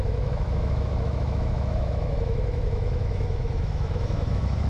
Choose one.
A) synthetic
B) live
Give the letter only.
A